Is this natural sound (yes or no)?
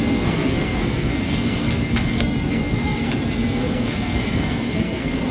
no